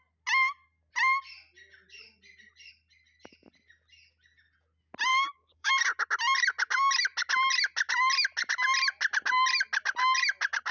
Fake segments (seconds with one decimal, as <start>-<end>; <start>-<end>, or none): 5.1-5.7